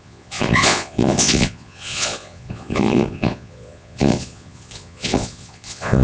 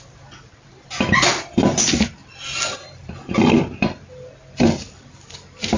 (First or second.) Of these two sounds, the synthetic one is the first